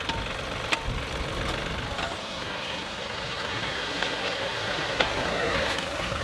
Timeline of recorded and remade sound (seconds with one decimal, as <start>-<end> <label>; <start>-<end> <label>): 0.0-2.2 recorded; 2.2-6.2 remade

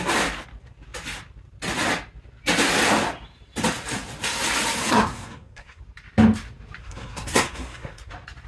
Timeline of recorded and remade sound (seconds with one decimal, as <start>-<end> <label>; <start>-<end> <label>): 0.0-4.8 recorded; 4.8-5.8 remade; 5.8-6.8 recorded; 6.8-8.1 remade; 8.1-8.5 recorded

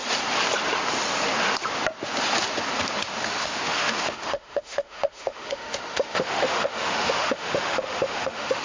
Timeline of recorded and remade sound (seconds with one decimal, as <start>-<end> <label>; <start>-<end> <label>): 0.0-3.2 recorded; 3.2-8.6 remade

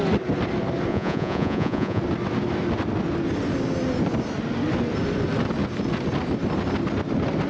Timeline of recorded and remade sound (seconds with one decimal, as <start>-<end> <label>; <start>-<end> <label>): 0.0-0.9 recorded; 0.9-2.0 remade; 2.0-7.5 recorded

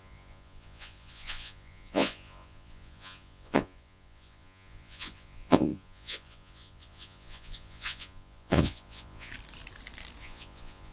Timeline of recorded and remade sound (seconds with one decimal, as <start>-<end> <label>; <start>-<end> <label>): 0.0-9.3 remade; 9.3-10.2 recorded; 10.2-10.9 remade